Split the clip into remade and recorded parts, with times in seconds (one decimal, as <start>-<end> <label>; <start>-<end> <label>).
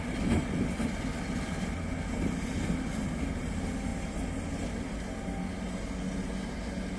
0.0-7.0 recorded